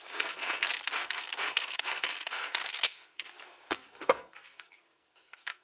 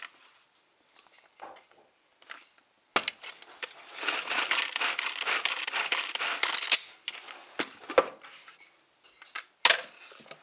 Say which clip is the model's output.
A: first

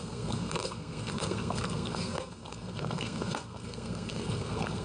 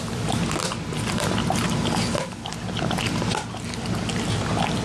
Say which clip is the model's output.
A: first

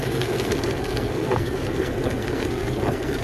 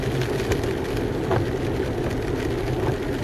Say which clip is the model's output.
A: first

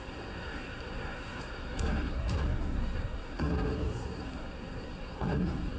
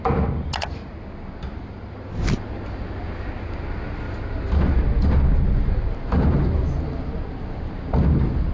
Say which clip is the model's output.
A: first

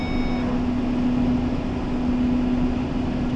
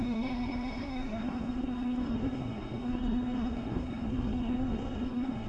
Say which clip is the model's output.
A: second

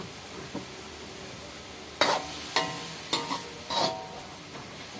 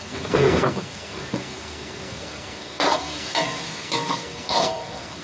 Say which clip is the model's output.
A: second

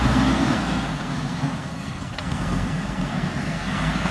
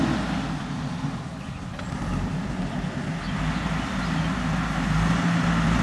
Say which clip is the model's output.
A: first